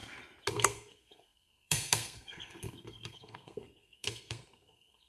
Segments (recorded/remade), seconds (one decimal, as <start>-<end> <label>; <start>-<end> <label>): 0.0-0.5 recorded; 0.5-5.1 remade